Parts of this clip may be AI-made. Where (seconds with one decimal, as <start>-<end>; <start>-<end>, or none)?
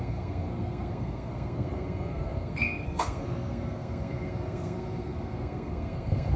0.0-6.4